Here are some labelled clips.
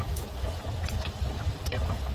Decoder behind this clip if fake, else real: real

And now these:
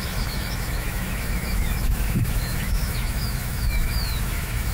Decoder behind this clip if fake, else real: fake, autoencoder, DAC-VAE